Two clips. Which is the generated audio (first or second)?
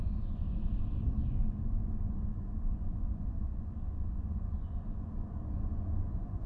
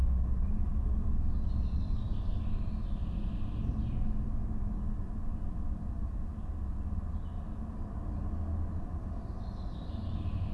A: first